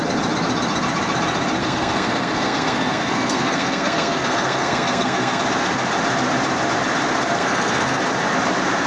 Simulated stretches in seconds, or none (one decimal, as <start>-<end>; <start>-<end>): 1.6-5.4; 7.3-8.0